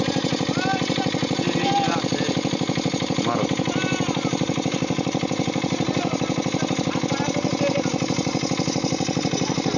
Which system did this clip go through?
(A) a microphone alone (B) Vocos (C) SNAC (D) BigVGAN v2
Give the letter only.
A